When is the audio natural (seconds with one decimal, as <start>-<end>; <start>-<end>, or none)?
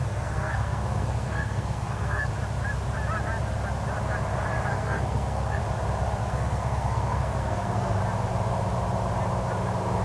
2.3-4.7; 5.6-6.2; 8.0-10.0